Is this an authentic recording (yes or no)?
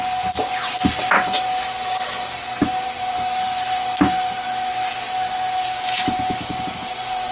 yes